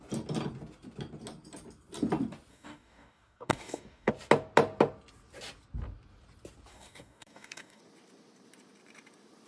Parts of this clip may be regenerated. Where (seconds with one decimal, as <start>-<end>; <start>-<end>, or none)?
2.5-4.1; 6.7-7.8